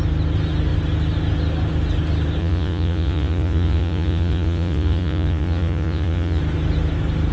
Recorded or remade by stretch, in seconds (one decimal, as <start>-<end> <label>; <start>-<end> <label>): 0.0-2.4 recorded; 2.4-6.4 remade; 6.4-7.3 recorded